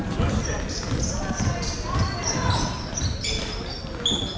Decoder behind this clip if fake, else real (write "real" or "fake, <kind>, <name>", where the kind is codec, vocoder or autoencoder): real